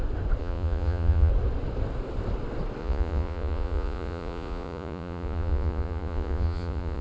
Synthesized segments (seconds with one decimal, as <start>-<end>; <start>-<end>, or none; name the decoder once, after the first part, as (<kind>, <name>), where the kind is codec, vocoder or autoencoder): 0.4-1.3 (vocoder, Vocos); 2.8-7.0